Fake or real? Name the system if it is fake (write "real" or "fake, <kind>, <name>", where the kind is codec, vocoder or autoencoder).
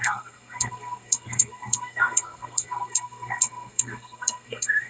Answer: fake, codec, SNAC